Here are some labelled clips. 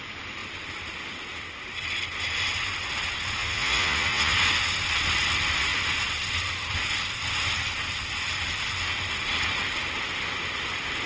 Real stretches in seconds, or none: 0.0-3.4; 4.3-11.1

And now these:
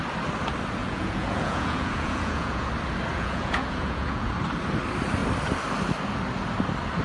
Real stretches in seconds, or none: 0.0-0.8; 2.7-3.1; 4.3-7.0

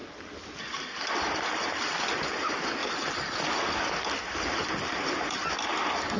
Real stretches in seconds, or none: 0.0-6.2

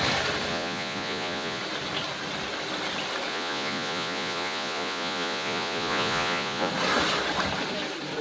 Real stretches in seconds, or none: 0.0-0.5; 1.6-3.3; 6.7-8.2

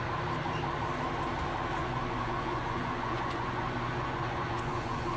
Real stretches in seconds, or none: 0.0-1.8

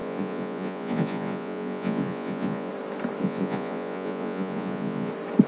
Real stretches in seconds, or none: 2.7-3.2; 5.1-5.5

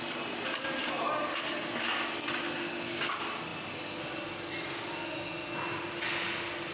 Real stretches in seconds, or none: 0.0-6.7